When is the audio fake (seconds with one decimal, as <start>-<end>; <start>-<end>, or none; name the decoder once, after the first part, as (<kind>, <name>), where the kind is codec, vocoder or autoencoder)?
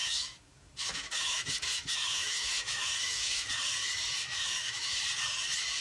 0.0-3.5 (autoencoder, DAC-VAE); 4.2-5.0